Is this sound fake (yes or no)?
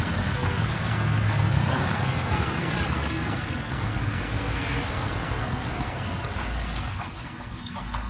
yes